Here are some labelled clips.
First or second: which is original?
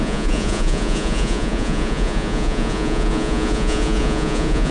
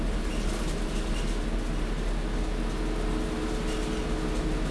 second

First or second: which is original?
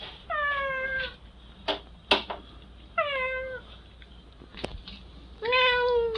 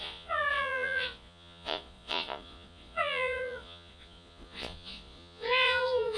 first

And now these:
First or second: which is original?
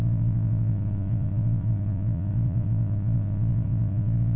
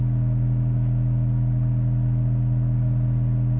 second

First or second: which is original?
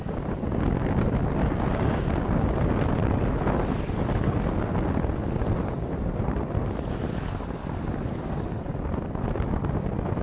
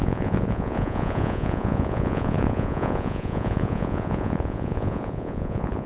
first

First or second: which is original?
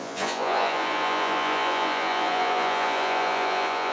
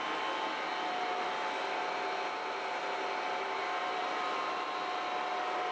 second